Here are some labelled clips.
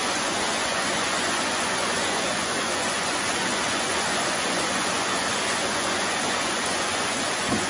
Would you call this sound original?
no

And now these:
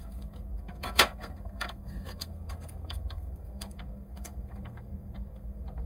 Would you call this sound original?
no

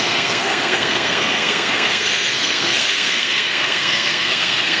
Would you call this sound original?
no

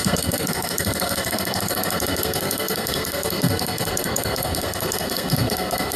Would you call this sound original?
no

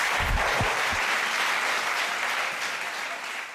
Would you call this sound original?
no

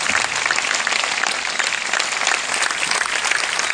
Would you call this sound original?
yes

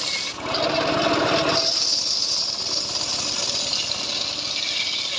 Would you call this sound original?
yes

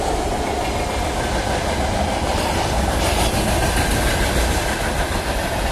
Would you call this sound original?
yes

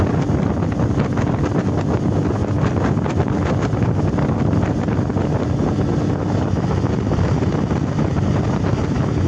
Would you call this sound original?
yes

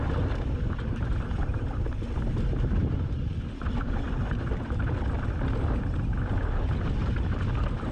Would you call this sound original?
yes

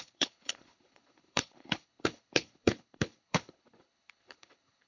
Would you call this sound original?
no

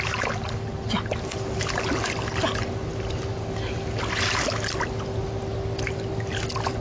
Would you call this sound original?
yes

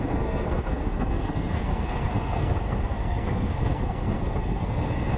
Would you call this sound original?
no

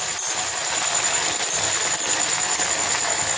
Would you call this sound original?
yes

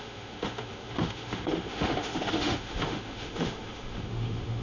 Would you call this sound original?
no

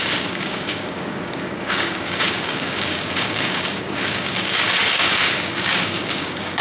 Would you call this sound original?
no